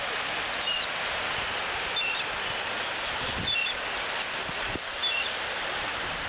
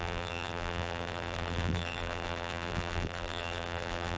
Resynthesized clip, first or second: second